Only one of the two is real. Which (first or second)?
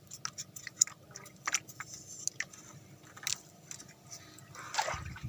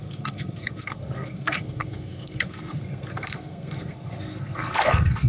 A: first